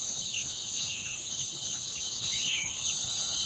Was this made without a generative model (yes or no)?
no